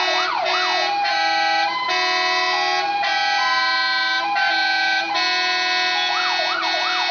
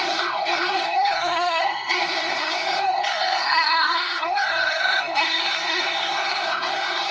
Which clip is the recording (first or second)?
first